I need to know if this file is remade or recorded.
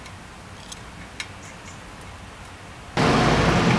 recorded